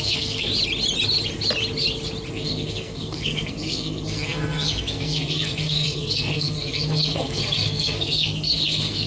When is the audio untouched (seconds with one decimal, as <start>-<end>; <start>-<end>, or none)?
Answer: 0.5-2.3